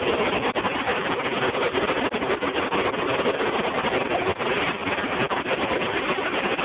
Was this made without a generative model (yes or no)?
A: yes